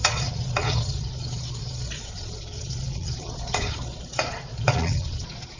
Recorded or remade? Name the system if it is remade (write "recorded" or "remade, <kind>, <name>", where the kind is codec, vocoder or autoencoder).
remade, vocoder, Vocos